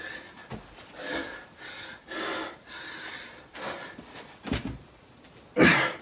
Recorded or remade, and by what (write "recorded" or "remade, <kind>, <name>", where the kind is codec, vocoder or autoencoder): recorded